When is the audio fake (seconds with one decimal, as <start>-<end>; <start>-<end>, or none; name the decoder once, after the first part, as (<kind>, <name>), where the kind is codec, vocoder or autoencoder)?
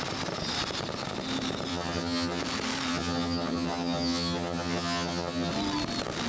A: 1.7-2.4 (vocoder, HiFi-GAN); 2.9-5.5